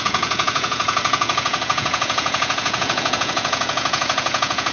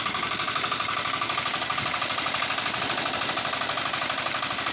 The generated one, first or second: first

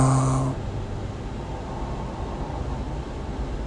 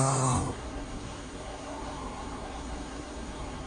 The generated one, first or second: second